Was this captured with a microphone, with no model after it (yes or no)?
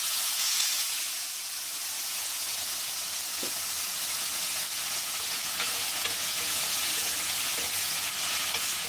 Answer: no